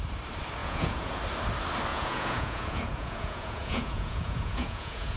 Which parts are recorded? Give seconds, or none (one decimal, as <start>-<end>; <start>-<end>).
0.0-0.6; 1.2-1.9